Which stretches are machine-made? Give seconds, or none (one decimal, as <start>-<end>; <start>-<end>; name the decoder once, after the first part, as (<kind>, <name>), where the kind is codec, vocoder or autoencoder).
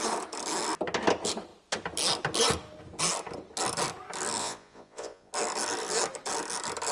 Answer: 4.4-5.3 (vocoder, Vocos)